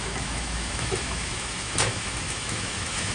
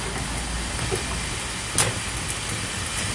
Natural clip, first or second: second